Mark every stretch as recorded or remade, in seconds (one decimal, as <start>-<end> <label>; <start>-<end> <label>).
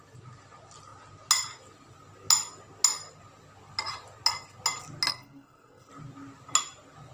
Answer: 0.0-5.1 recorded; 5.1-5.9 remade; 5.9-7.1 recorded